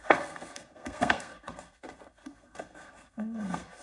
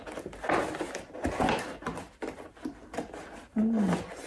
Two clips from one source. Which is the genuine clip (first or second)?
second